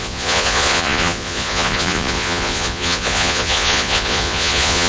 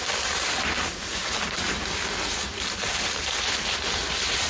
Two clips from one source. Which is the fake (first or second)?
first